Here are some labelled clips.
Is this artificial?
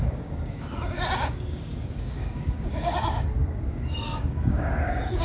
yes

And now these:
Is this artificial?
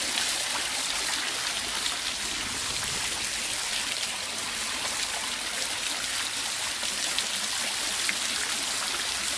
no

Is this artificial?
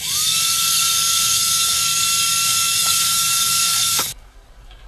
yes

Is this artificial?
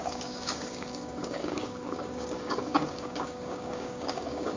yes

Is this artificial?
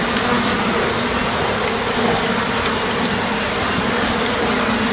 no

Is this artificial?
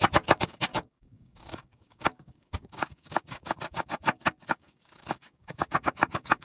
yes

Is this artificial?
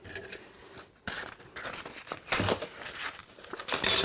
no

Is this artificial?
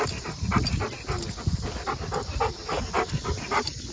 no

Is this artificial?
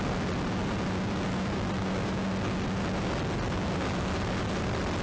no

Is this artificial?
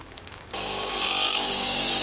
yes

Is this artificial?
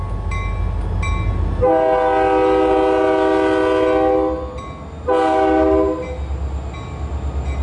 no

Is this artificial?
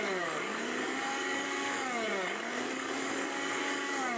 yes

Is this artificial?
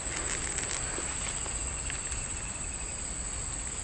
no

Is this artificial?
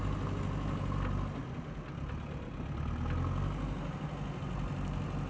no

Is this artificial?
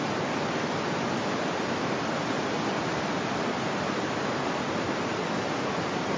no